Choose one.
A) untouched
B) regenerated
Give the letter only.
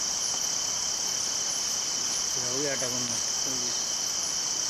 A